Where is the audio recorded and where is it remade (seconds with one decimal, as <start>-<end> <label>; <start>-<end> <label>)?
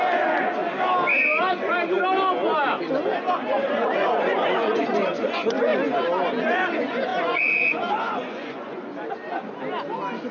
0.0-0.6 remade; 0.6-3.5 recorded; 3.5-5.7 remade; 5.7-6.4 recorded; 6.4-8.9 remade; 8.9-10.3 recorded